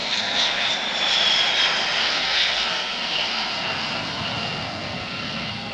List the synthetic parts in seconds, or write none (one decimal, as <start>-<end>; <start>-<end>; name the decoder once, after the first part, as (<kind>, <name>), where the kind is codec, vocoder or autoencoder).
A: 0.0-0.7 (codec, SNAC); 2.0-5.7